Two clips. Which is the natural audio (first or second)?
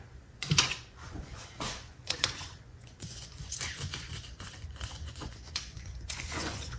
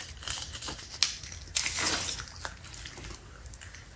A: second